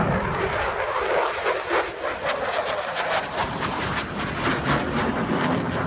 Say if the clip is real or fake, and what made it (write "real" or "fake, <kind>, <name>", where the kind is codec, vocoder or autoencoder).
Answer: real